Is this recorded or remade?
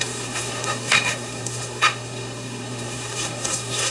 remade